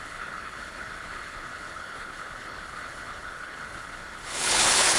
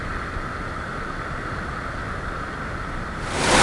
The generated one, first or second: first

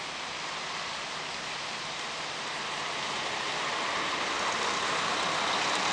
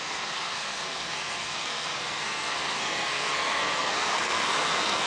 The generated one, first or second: second